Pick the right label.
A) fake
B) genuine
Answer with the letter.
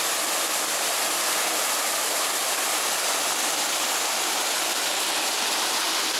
B